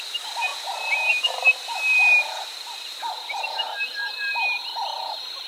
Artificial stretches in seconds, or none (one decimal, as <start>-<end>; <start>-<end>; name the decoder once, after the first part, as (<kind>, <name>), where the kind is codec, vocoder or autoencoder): 0.5-3.4 (vocoder, BigVGAN v2); 4.0-4.6